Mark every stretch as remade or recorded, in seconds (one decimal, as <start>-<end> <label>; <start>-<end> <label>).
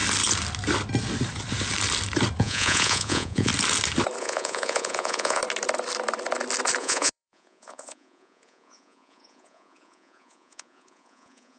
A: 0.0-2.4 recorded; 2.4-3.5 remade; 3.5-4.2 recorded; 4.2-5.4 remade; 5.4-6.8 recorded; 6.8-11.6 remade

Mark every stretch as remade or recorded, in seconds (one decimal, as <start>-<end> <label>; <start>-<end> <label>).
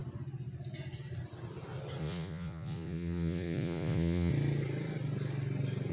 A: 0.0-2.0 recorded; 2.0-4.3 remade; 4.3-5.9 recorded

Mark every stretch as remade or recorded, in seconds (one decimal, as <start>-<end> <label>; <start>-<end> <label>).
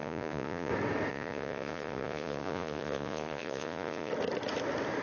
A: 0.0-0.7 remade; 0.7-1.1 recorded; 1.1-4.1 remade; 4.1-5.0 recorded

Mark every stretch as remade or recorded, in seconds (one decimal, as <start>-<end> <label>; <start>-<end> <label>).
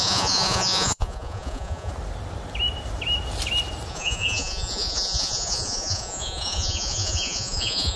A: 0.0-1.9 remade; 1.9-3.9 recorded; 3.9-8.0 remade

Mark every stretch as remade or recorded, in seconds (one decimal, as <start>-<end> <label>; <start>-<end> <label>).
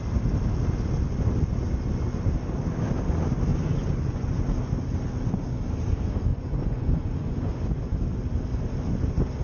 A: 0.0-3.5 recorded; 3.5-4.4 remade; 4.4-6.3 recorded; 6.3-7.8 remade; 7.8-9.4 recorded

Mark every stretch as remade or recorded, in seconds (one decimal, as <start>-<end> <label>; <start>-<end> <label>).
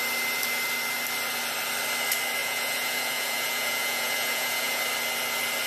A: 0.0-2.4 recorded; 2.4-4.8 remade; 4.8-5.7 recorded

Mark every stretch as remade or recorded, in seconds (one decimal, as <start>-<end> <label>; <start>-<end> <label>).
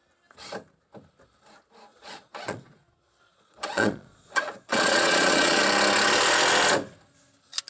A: 0.0-1.9 recorded; 1.9-5.6 remade; 5.6-7.7 recorded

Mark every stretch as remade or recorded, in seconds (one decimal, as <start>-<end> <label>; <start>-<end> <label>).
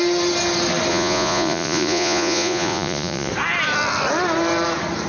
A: 0.0-0.9 recorded; 0.9-3.3 remade; 3.3-5.1 recorded